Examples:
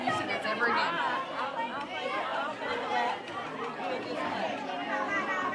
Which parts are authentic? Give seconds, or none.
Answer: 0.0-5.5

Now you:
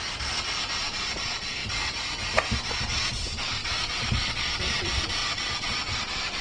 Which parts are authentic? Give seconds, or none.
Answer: 0.0-0.8; 1.6-2.6

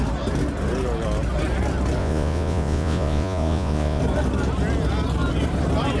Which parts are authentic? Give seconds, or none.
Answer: 0.0-2.0; 4.0-6.0

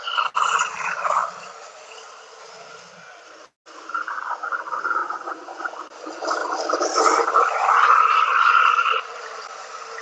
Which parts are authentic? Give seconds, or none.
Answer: 0.0-5.0; 5.6-10.0

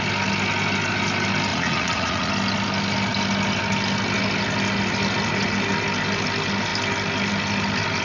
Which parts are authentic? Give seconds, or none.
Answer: 0.0-1.5; 2.3-8.0